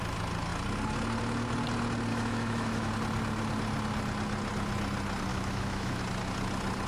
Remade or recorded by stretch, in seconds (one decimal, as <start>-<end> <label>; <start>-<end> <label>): 0.0-2.1 recorded; 2.1-2.9 remade; 2.9-5.3 recorded; 5.3-6.0 remade; 6.0-6.9 recorded